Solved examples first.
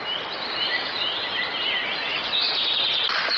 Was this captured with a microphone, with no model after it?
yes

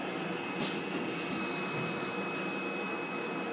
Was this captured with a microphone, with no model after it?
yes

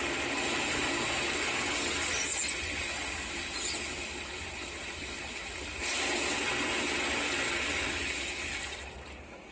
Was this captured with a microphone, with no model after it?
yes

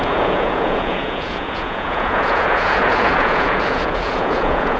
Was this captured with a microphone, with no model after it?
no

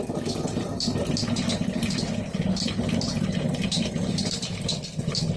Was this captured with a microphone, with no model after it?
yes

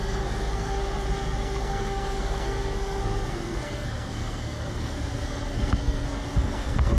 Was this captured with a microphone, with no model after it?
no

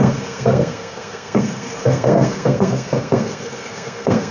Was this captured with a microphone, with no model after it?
no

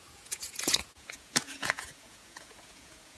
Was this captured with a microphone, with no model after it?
no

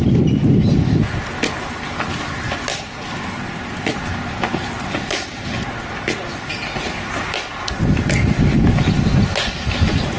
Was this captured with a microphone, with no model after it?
yes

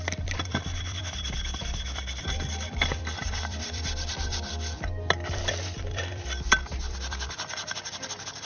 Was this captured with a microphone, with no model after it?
no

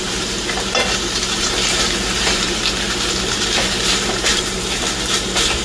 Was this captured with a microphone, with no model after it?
no